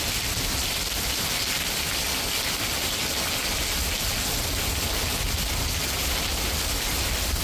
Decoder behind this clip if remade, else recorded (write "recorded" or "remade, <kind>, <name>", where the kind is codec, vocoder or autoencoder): recorded